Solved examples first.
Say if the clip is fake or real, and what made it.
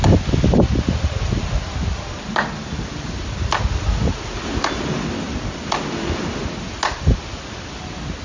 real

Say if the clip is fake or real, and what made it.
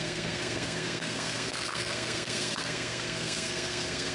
fake, codec, SNAC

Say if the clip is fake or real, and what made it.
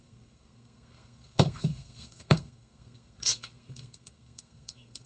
fake, codec, SNAC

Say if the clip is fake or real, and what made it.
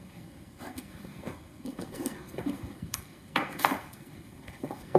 fake, codec, SNAC